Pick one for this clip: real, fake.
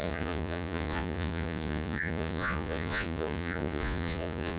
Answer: fake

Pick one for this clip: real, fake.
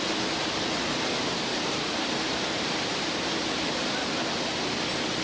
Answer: real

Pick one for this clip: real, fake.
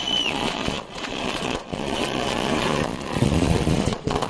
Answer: fake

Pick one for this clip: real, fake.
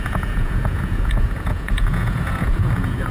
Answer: fake